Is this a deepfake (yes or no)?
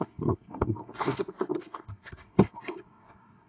yes